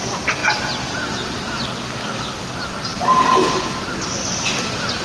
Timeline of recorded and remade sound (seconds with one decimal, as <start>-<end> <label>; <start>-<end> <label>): 0.0-5.0 recorded